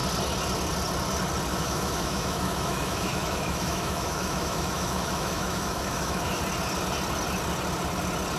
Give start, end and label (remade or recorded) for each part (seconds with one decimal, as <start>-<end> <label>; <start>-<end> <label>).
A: 0.0-1.5 recorded; 1.5-6.4 remade; 6.4-8.4 recorded